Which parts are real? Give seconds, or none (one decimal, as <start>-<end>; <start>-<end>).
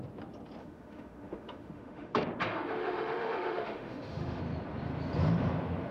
0.0-0.6; 2.2-2.8; 4.4-5.9